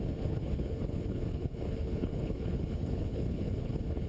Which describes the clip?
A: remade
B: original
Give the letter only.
A